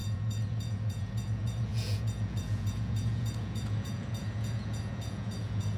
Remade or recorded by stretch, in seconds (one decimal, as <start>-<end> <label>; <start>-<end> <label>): 0.0-5.8 remade